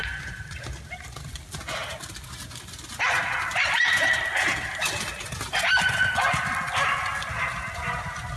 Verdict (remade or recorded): recorded